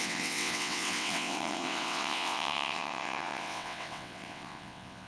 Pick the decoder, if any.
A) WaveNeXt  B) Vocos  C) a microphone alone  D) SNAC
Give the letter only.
A